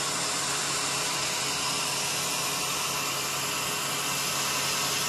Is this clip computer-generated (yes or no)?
no